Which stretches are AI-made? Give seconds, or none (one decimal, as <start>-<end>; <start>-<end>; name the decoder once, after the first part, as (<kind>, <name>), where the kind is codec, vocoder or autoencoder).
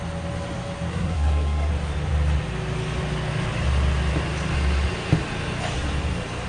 0.9-1.7 (codec, SNAC)